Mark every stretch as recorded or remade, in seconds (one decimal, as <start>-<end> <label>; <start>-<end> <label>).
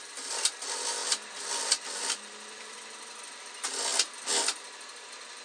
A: 0.0-5.4 recorded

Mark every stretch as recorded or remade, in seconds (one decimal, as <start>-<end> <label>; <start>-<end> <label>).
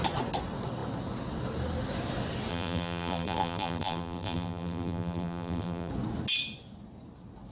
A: 0.0-2.5 recorded; 2.5-5.9 remade; 5.9-7.5 recorded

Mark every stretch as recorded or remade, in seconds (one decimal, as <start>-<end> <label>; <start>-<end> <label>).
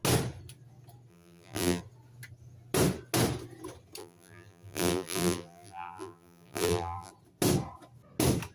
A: 0.0-1.1 recorded; 1.1-1.8 remade; 1.8-4.0 recorded; 4.0-7.1 remade; 7.1-8.5 recorded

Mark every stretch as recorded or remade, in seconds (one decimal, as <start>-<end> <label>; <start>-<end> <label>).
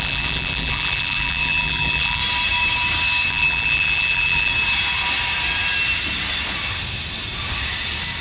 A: 0.0-2.2 remade; 2.2-3.3 recorded; 3.3-4.5 remade; 4.5-8.2 recorded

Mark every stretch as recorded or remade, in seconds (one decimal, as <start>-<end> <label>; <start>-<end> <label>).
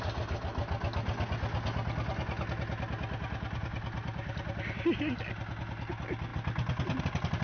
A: 0.0-6.3 recorded; 6.3-7.0 remade; 7.0-7.4 recorded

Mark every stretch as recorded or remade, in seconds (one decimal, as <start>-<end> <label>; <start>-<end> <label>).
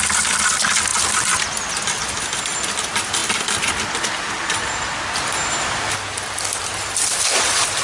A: 0.0-7.8 recorded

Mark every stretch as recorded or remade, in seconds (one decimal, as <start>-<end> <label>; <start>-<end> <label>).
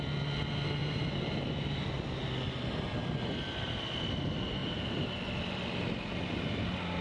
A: 0.0-0.8 recorded; 0.8-1.7 remade; 1.7-4.6 recorded; 4.6-5.1 remade; 5.1-7.0 recorded